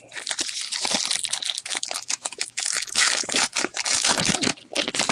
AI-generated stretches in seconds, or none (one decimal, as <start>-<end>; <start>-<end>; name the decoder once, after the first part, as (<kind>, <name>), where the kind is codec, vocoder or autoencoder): 1.7-4.3 (autoencoder, DAC-VAE)